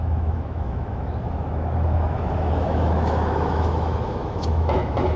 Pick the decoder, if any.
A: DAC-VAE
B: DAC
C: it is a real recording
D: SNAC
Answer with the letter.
A